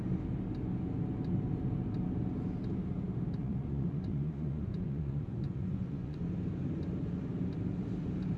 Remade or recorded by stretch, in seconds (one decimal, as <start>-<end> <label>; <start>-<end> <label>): 0.0-3.4 recorded; 3.4-6.2 remade; 6.2-8.4 recorded